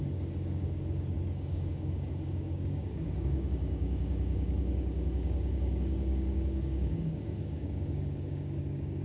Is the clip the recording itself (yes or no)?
no